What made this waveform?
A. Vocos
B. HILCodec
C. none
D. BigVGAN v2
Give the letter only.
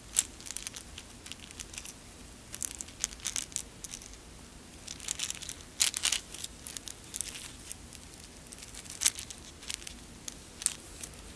C